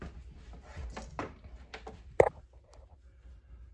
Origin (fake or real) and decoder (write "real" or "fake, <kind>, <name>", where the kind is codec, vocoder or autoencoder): real